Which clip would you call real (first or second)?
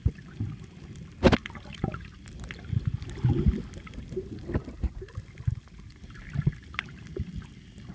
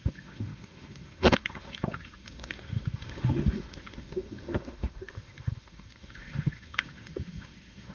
first